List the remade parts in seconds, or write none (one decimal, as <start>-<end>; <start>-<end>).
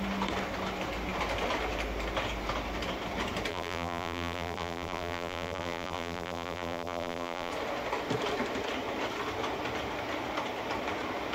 3.5-7.5